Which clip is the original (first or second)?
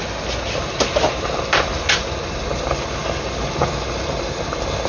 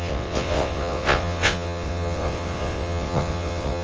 first